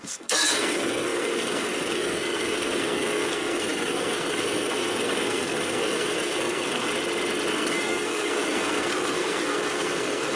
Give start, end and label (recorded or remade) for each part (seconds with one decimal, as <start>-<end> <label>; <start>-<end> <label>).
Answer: 0.0-6.9 remade; 6.9-7.5 recorded; 7.5-10.4 remade